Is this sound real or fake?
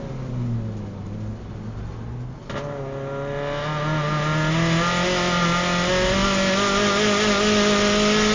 real